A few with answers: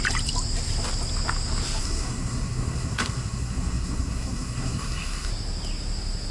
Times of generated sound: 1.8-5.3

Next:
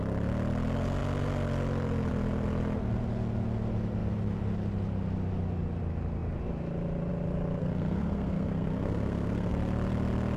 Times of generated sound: 7.6-9.5

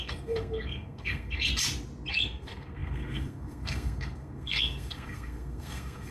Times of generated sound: 0.0-1.5; 2.1-6.1

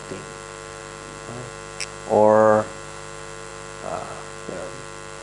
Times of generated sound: none

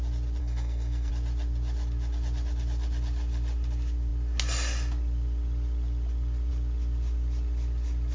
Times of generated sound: 0.4-1.1

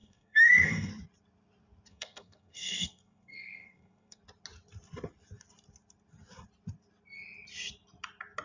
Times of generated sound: 0.0-0.9; 1.9-4.2

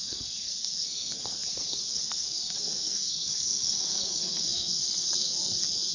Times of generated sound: 0.0-5.9

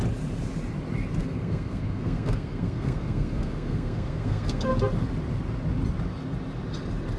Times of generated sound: 1.2-4.7